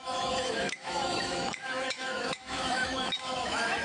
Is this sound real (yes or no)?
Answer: no